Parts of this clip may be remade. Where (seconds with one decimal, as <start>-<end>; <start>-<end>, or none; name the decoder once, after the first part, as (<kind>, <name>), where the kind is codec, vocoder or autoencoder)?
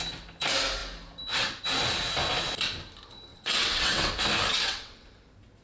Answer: 3.3-4.1 (vocoder, WaveNeXt); 4.5-5.1